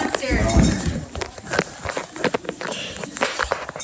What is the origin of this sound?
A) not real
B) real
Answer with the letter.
B